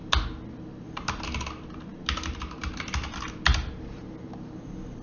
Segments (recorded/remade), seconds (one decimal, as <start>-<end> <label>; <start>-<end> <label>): 0.0-5.0 recorded